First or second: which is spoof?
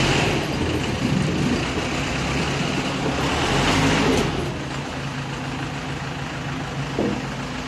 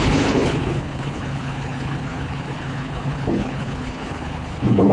second